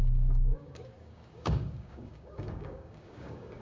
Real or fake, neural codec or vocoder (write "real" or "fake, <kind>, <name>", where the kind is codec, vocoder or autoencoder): fake, codec, DAC